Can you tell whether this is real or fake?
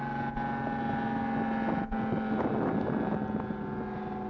real